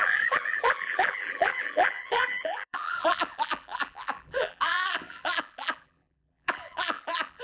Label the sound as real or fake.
fake